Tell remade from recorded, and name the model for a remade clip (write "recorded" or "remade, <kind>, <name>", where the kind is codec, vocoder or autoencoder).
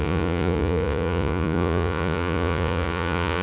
remade, vocoder, Vocos